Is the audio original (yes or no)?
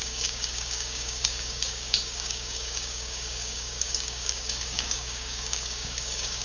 no